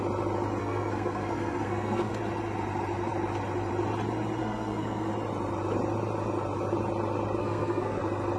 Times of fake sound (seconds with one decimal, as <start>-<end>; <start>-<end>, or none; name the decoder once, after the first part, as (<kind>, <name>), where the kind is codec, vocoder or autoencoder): 0.6-2.1 (codec, SNAC); 4.4-5.1; 7.4-8.0